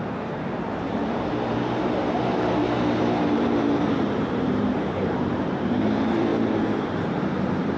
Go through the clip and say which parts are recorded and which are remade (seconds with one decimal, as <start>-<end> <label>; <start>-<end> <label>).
0.0-6.3 remade; 6.3-7.1 recorded; 7.1-7.8 remade